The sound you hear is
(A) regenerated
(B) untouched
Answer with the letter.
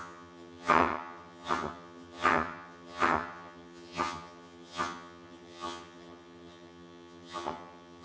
A